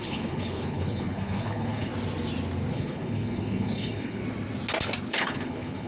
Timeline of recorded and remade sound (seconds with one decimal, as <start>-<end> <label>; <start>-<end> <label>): 0.0-1.9 remade; 1.9-2.7 recorded; 2.7-4.2 remade; 4.2-5.1 recorded; 5.1-5.9 remade

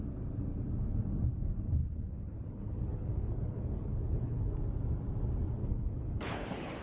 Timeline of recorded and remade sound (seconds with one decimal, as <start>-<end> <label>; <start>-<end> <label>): 0.0-1.8 recorded; 1.8-4.5 remade; 4.5-5.6 recorded; 5.6-6.8 remade

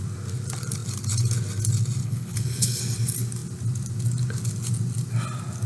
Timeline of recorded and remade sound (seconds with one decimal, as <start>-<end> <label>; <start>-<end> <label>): 0.0-2.0 recorded; 2.0-2.8 remade; 2.8-5.7 recorded